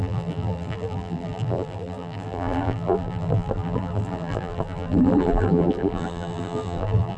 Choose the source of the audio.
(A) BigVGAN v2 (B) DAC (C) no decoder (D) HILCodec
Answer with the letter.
A